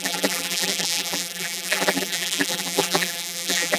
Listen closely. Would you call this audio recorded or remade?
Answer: remade